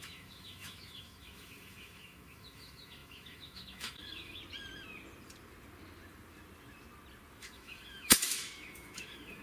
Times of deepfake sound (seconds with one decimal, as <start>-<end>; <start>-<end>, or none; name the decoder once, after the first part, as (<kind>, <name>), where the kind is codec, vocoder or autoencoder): 0.0-4.4 (autoencoder, DAC-VAE); 7.4-9.4